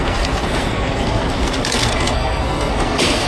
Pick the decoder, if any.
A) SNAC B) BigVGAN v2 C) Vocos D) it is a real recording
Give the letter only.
A